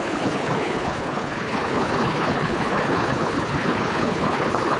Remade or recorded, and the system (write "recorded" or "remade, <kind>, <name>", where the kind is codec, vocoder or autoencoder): remade, codec, HILCodec